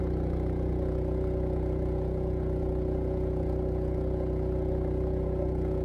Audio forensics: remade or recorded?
remade